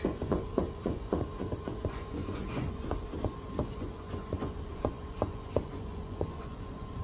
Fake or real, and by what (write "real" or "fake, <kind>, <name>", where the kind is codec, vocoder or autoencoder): fake, vocoder, Vocos